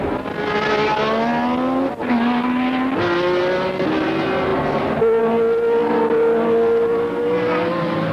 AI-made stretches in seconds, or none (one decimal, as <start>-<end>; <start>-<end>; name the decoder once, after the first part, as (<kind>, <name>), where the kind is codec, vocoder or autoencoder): none